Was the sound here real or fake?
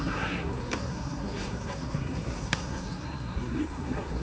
fake